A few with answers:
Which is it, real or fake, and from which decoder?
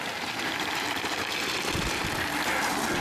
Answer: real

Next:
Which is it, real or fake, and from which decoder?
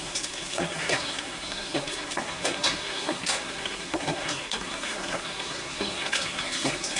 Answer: fake, codec, SNAC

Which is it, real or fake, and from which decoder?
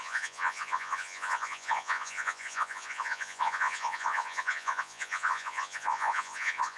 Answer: fake, vocoder, Vocos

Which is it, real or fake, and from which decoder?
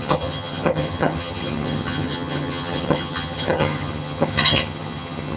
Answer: fake, vocoder, HiFi-GAN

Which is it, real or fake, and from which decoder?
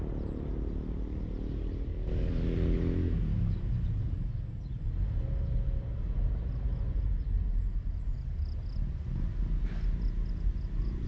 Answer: real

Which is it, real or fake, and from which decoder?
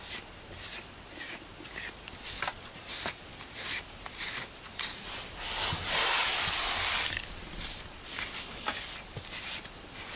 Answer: real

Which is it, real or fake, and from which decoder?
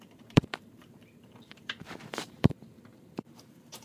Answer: fake, vocoder, BigVGAN v2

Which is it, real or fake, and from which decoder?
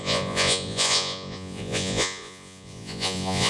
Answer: fake, vocoder, Vocos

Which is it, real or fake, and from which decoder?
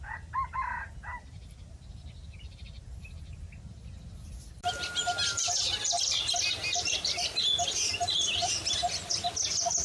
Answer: real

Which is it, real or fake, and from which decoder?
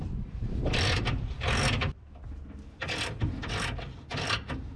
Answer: real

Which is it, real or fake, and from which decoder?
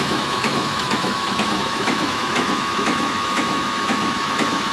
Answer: fake, autoencoder, DAC-VAE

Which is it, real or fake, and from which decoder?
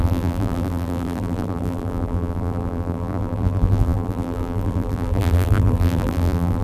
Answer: fake, vocoder, BigVGAN v2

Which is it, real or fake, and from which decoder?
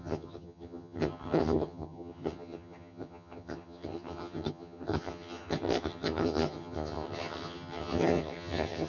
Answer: fake, vocoder, HiFi-GAN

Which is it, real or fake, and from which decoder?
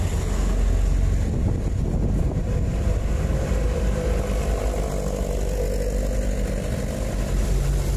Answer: real